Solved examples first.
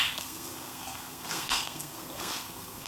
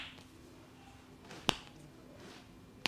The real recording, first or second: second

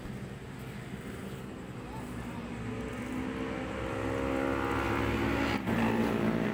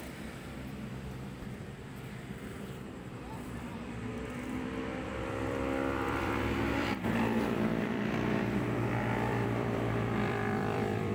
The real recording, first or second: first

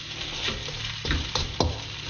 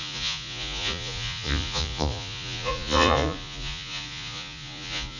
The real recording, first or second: first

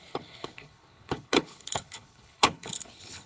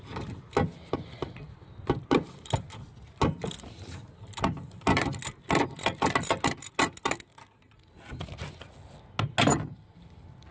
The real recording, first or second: second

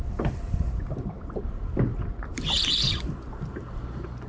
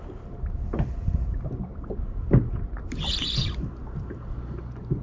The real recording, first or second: second